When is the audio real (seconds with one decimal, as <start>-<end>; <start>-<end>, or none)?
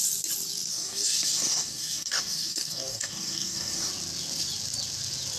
0.0-0.7; 3.9-5.4